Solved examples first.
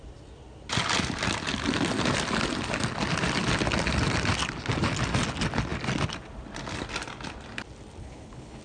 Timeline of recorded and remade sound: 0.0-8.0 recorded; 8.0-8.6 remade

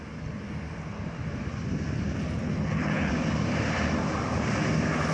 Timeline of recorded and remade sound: 0.0-2.4 recorded; 2.4-3.1 remade; 3.1-5.1 recorded

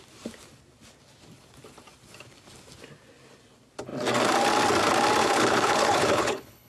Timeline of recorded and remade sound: 0.0-5.2 recorded; 5.2-6.7 remade

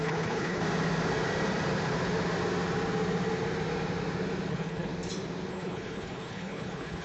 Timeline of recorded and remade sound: 0.0-0.6 remade; 0.6-4.5 recorded; 4.5-4.9 remade; 4.9-5.5 recorded; 5.5-7.0 remade

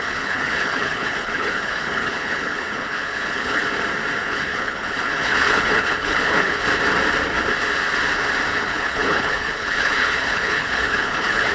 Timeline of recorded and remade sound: 0.0-3.6 remade; 3.6-4.2 recorded; 4.2-6.6 remade; 6.6-8.5 recorded; 8.5-11.5 remade

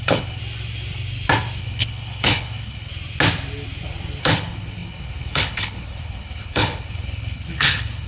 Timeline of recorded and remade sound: 0.0-0.4 remade; 0.4-1.6 recorded; 1.6-2.9 remade; 2.9-4.2 recorded; 4.2-8.1 remade

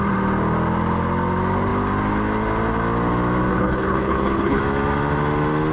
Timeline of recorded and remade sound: 0.0-3.5 recorded; 3.5-4.6 remade; 4.6-5.7 recorded